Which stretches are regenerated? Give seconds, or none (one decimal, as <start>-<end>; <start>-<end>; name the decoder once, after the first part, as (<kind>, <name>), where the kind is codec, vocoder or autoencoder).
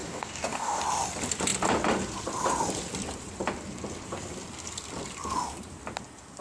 0.0-0.8 (codec, DAC)